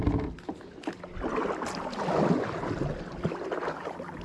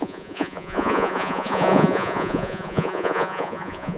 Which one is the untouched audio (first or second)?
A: first